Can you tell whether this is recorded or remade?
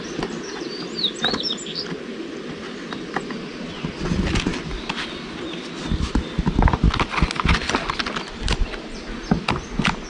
recorded